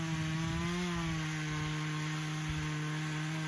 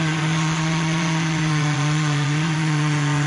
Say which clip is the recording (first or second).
first